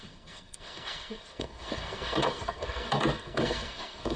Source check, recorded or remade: remade